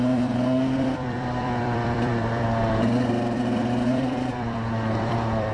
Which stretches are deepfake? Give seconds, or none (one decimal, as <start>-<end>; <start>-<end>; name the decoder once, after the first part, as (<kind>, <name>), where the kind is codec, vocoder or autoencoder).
0.0-5.5 (vocoder, BigVGAN v2)